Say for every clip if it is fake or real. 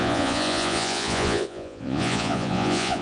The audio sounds fake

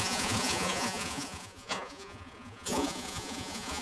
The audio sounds fake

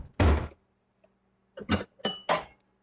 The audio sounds real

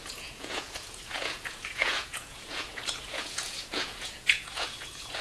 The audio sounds fake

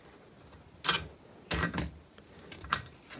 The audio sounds real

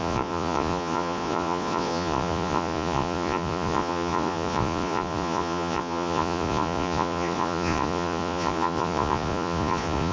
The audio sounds fake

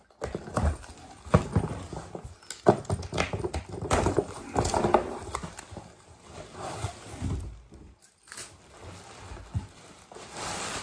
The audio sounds real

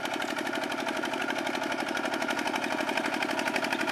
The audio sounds real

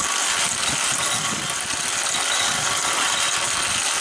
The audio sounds real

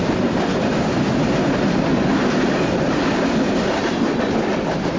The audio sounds real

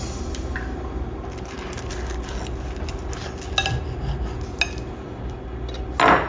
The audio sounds real